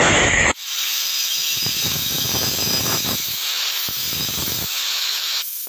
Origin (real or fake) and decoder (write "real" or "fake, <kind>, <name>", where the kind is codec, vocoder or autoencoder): fake, autoencoder, DAC-VAE